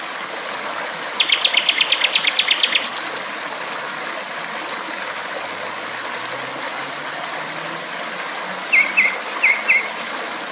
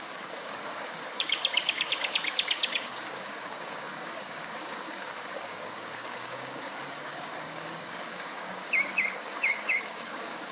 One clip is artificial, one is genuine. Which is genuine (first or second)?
first